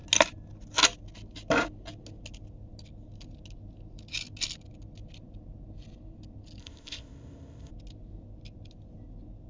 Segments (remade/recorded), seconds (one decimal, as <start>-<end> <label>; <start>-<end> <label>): 0.0-6.6 recorded; 6.6-7.7 remade; 7.7-9.5 recorded